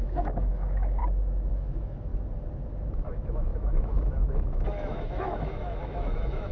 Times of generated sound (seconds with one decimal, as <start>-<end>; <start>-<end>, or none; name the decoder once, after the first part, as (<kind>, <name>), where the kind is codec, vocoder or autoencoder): 0.0-1.0 (autoencoder, DAC-VAE); 1.5-2.1; 3.1-6.5